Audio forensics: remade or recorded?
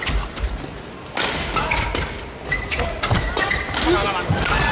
recorded